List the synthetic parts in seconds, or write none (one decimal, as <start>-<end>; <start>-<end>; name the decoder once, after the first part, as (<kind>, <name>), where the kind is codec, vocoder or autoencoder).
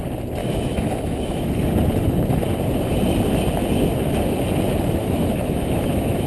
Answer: 0.4-1.5 (autoencoder, DAC-VAE); 5.0-6.3